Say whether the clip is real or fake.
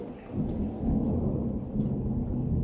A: real